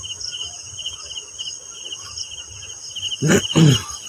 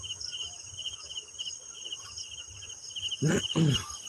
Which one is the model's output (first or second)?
second